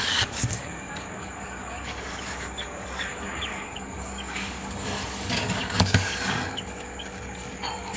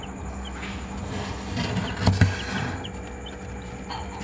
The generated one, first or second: first